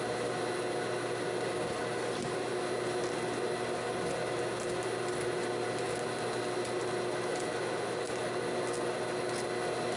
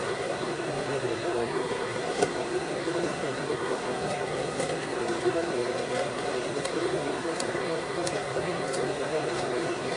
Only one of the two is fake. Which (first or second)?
second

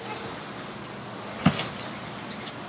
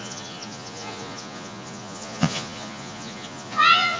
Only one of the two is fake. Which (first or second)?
second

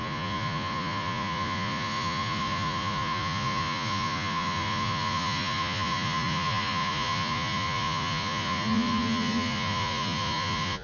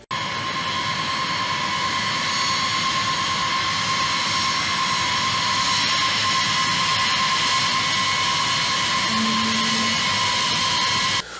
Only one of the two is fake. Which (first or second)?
first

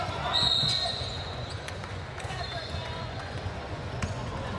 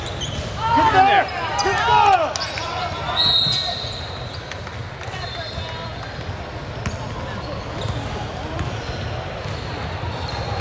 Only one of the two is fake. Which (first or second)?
first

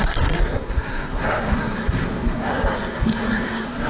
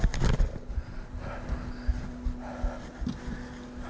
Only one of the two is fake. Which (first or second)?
first